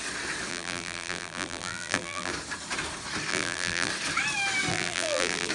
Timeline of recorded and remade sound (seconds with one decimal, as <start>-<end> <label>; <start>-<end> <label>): 0.0-0.5 recorded; 0.5-2.3 remade; 2.3-3.3 recorded; 3.3-3.9 remade; 3.9-4.7 recorded; 4.7-5.5 remade